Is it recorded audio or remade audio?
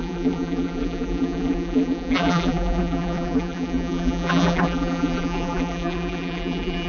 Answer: remade